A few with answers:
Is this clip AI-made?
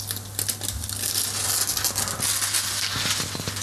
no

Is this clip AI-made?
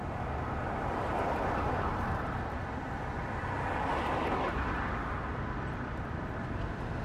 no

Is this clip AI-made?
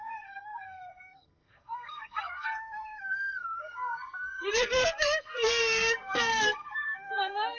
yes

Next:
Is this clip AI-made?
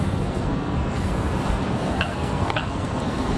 yes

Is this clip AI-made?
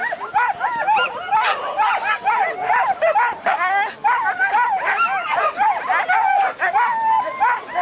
no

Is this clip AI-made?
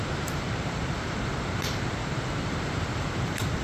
yes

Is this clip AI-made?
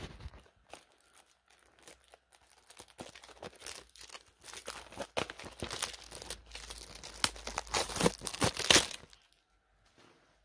no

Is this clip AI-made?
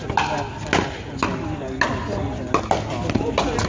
no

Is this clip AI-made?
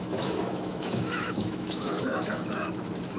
yes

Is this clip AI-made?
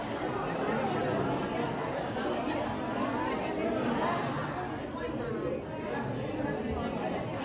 no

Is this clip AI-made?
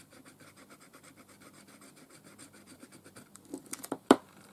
yes